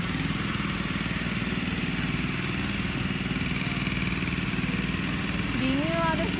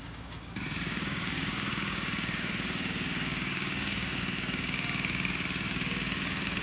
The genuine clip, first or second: first